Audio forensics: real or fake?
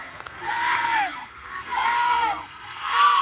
fake